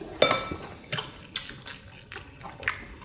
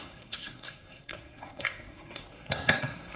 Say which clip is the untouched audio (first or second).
first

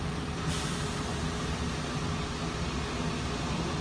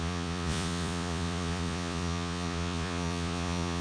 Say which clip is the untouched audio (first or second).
first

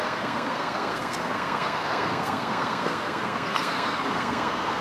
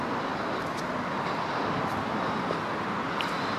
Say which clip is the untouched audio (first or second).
second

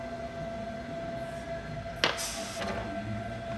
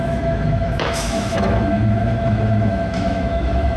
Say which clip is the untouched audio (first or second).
first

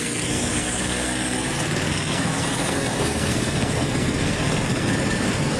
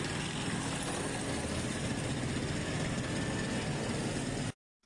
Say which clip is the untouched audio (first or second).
second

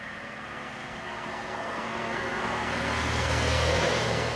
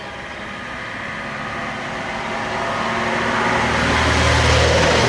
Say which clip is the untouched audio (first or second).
second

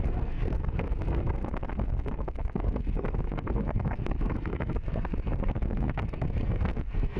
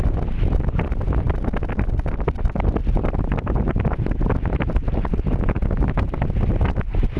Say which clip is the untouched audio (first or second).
second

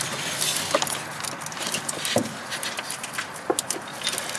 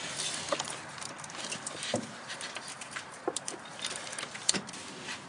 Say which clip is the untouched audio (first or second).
first